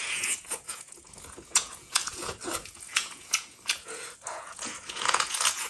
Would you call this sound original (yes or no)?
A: no